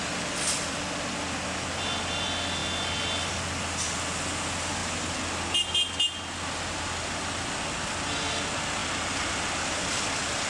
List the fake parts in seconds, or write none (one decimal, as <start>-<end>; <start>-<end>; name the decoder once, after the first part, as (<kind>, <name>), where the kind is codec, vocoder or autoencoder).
none